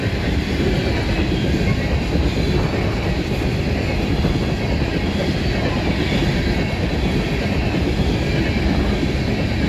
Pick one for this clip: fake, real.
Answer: real